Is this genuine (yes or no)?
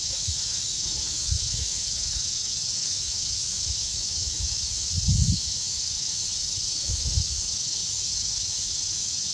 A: no